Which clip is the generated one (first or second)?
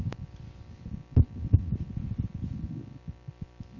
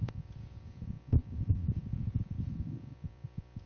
second